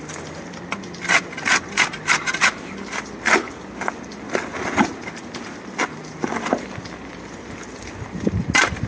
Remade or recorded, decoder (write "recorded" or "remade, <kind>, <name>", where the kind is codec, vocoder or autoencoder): recorded